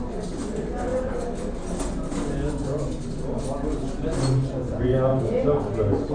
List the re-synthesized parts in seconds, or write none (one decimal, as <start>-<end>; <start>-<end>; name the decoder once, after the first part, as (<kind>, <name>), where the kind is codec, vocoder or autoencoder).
none